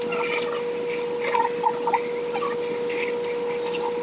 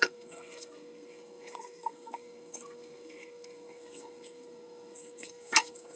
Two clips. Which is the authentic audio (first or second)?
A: first